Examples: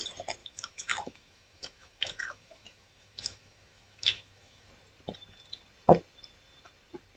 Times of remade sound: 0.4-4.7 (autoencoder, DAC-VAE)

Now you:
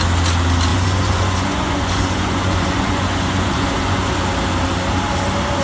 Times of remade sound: 0.7-4.1 (vocoder, Vocos)

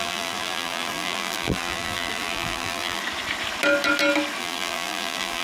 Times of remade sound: 0.0-3.0 (vocoder, BigVGAN v2); 4.4-5.4

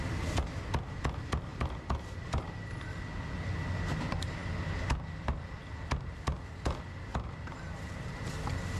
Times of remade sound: 1.5-2.7 (vocoder, BigVGAN v2); 7.1-8.3

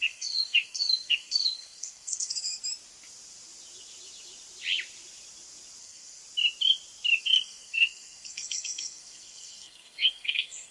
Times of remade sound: 0.0-2.6 (codec, SNAC); 5.8-6.2; 7.2-10.7